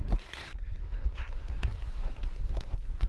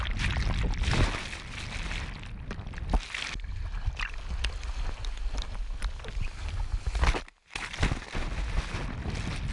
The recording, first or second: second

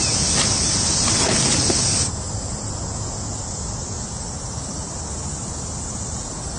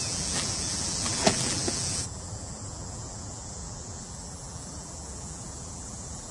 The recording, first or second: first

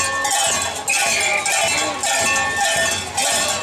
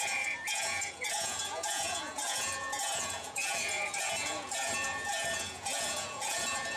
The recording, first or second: first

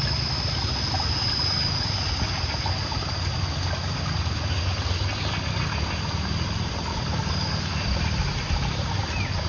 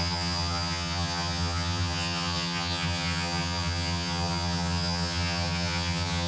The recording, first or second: first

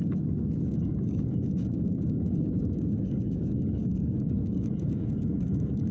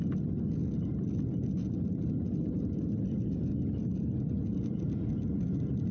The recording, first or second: second